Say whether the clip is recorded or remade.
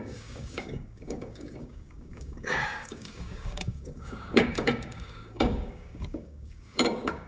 remade